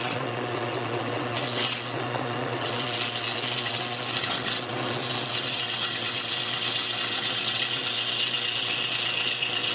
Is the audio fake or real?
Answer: fake